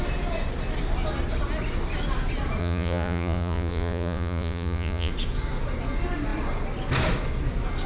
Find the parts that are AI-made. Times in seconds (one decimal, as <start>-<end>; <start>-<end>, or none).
2.6-5.1